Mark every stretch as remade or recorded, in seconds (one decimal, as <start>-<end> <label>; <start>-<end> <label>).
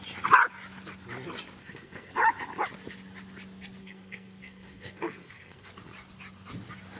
0.0-1.6 recorded; 1.6-2.1 remade; 2.1-3.8 recorded; 3.8-5.7 remade; 5.7-7.0 recorded